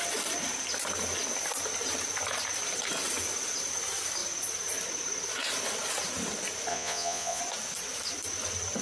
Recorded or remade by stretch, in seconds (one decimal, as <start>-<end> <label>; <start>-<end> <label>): 0.0-6.7 recorded; 6.7-7.4 remade; 7.4-8.8 recorded

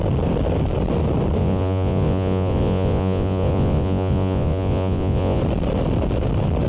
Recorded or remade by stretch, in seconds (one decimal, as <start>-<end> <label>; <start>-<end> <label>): 0.0-1.4 recorded; 1.4-5.4 remade; 5.4-6.7 recorded

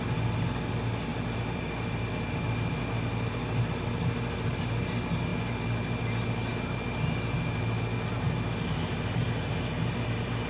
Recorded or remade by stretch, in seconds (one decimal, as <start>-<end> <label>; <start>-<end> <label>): 0.0-10.5 recorded

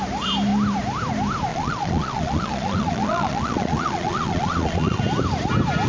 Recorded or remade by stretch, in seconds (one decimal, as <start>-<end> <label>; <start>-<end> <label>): 0.0-1.5 recorded; 1.5-5.0 remade; 5.0-5.9 recorded